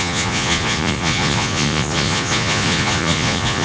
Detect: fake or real fake